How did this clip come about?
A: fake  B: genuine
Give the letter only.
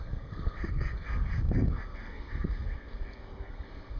A